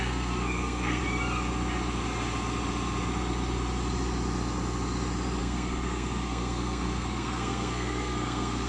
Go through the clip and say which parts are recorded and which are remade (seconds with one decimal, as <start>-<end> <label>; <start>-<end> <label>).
0.0-1.0 remade; 1.0-5.4 recorded; 5.4-8.7 remade